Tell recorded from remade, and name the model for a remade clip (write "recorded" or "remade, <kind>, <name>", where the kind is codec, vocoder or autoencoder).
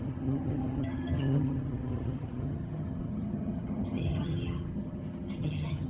remade, vocoder, HiFi-GAN